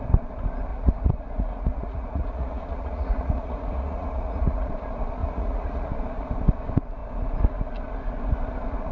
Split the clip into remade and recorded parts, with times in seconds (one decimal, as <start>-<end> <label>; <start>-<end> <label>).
0.0-0.7 recorded; 0.7-4.7 remade; 4.7-5.2 recorded; 5.2-5.9 remade; 5.9-8.9 recorded